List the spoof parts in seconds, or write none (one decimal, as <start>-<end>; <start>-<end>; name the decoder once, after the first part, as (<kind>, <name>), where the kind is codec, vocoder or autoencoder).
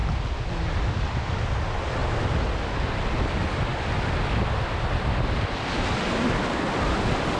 none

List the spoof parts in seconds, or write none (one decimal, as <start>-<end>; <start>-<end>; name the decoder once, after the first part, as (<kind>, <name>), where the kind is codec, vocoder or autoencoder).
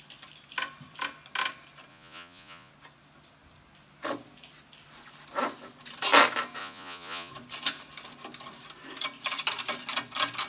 1.9-2.7 (vocoder, Vocos); 6.6-7.3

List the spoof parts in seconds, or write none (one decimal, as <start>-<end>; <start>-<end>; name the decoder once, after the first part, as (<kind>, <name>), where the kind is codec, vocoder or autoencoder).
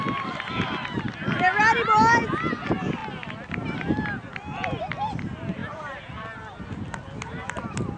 none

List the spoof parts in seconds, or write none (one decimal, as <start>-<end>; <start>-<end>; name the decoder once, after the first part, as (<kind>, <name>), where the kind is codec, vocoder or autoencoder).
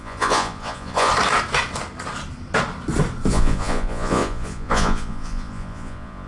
0.0-1.1 (vocoder, Vocos); 3.3-6.3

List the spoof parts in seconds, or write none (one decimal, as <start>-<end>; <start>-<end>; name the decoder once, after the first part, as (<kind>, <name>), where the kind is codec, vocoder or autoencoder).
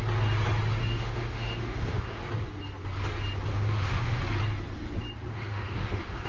0.8-2.2 (autoencoder, DAC-VAE); 3.5-4.2; 5.3-6.3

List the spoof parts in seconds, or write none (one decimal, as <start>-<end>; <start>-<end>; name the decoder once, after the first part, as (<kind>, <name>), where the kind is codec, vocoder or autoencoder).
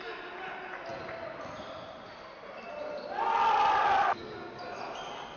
none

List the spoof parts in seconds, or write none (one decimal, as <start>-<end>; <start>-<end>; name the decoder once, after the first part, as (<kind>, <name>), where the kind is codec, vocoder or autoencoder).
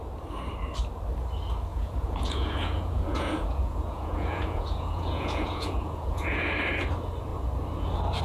1.7-6.5 (vocoder, Vocos)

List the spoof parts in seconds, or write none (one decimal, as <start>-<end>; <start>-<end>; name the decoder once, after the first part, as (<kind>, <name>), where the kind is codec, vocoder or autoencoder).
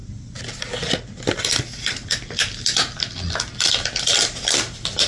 none